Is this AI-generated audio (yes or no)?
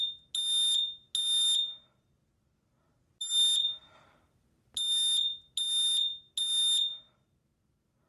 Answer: no